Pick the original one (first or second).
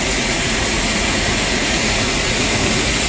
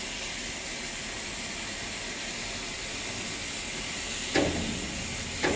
second